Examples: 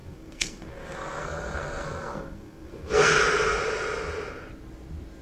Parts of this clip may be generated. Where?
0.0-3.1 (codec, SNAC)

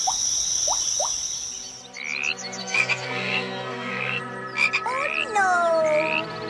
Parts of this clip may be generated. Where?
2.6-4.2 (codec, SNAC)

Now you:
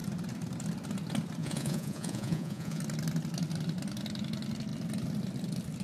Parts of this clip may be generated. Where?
1.4-2.8 (vocoder, Vocos)